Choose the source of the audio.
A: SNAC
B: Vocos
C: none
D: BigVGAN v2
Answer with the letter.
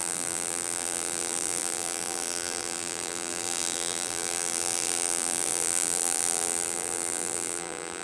D